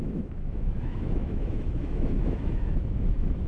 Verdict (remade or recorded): remade